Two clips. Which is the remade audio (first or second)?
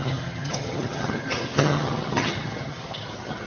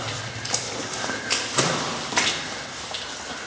first